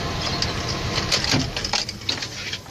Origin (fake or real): real